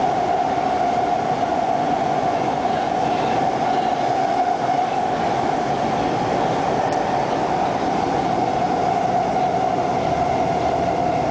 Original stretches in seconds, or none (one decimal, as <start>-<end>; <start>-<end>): 0.0-1.5; 3.1-11.3